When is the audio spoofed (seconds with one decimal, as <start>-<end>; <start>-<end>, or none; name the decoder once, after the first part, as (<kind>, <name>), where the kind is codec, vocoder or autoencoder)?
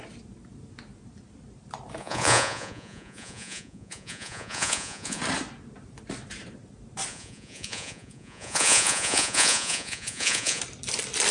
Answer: 2.0-5.2 (vocoder, Vocos); 7.1-10.6